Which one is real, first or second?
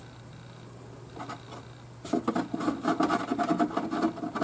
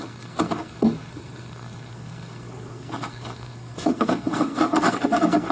first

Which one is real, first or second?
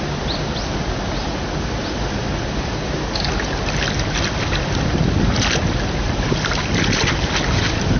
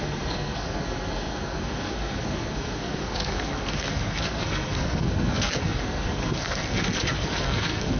first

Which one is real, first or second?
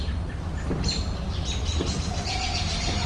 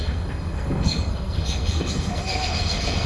first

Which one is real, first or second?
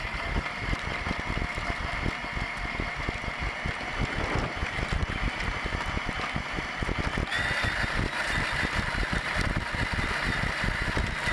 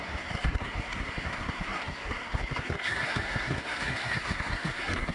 first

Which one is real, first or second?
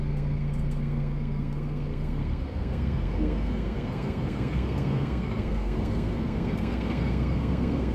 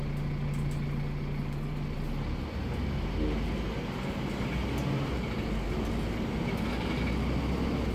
second